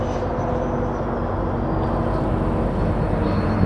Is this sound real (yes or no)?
yes